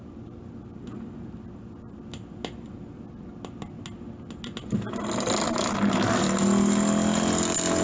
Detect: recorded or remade recorded